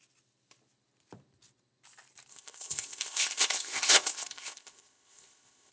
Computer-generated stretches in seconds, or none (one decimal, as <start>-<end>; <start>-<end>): 2.3-5.7